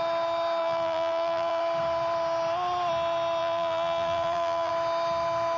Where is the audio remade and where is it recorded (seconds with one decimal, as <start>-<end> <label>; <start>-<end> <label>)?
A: 0.0-0.6 recorded; 0.6-1.6 remade; 1.6-3.4 recorded; 3.4-4.7 remade; 4.7-5.6 recorded